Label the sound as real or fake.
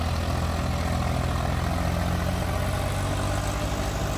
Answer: real